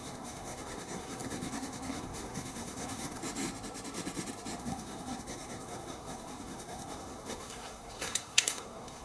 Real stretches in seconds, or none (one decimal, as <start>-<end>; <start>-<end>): 3.2-4.6